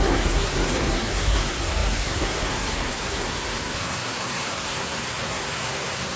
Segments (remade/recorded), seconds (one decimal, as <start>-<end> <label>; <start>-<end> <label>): 0.0-6.2 remade

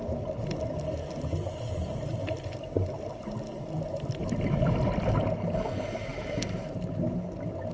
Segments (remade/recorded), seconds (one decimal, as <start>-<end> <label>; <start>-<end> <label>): 0.0-6.1 recorded; 6.1-6.6 remade; 6.6-7.7 recorded

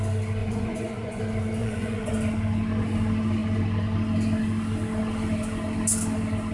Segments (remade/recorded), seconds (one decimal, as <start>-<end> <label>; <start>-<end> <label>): 0.0-0.4 recorded; 0.4-1.2 remade; 1.2-1.6 recorded; 1.6-2.1 remade; 2.1-6.5 recorded

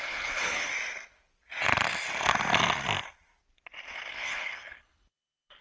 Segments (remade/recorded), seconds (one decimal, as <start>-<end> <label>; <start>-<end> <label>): 0.0-0.7 remade; 0.7-4.1 recorded; 4.1-5.6 remade